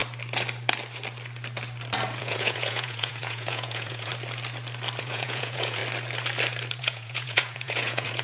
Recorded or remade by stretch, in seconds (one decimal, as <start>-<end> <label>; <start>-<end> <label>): 0.0-2.2 recorded; 2.2-4.1 remade; 4.1-5.0 recorded; 5.0-5.8 remade; 5.8-6.8 recorded; 6.8-8.2 remade